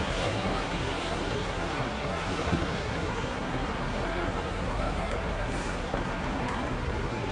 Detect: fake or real fake